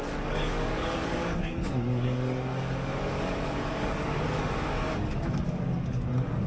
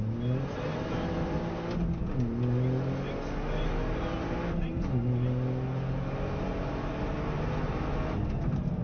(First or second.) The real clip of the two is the second